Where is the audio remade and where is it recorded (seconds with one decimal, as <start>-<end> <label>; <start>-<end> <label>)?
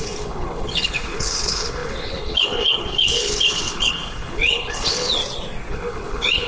0.0-5.2 remade; 5.2-5.7 recorded; 5.7-6.5 remade